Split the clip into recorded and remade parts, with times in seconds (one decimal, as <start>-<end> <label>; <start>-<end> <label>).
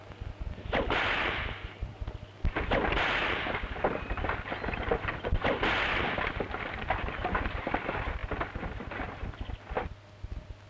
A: 0.0-10.7 recorded